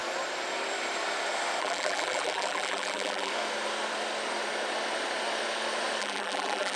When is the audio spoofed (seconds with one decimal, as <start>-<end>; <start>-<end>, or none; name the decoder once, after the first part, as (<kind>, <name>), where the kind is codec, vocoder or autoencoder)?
1.6-3.3 (vocoder, BigVGAN v2); 6.0-6.8